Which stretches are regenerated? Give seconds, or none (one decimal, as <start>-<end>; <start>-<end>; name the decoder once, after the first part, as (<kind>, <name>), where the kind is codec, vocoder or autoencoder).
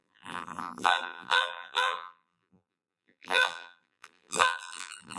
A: 0.0-5.2 (vocoder, BigVGAN v2)